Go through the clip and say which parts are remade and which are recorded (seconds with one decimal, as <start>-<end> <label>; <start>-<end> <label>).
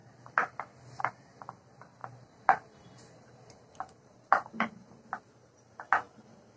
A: 0.0-2.0 recorded; 2.0-5.2 remade; 5.2-6.6 recorded